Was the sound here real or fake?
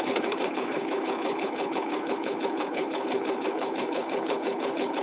fake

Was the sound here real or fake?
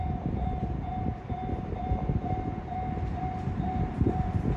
real